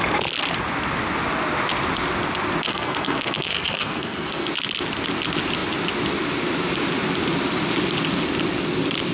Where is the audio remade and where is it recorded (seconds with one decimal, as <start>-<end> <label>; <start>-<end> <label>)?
0.0-2.7 recorded; 2.7-4.5 remade; 4.5-9.1 recorded